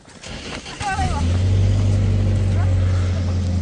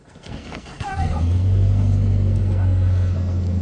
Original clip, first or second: first